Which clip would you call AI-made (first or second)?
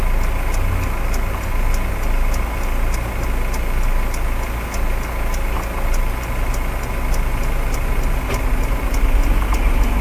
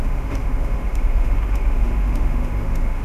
second